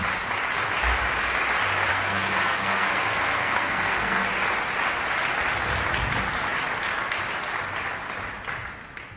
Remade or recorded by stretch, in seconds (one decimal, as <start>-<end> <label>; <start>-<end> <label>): 0.0-1.9 recorded; 1.9-4.3 remade; 4.3-9.2 recorded